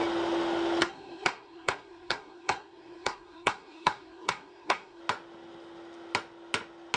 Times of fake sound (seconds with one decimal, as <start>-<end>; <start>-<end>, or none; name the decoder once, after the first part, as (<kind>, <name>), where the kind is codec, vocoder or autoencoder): 0.8-5.0 (codec, SNAC)